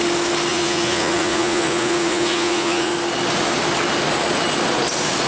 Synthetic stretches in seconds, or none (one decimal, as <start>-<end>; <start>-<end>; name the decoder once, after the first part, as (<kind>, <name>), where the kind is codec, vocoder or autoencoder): 0.5-2.9 (vocoder, Vocos)